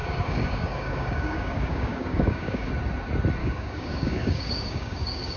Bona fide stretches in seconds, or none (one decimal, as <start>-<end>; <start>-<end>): 2.7-3.4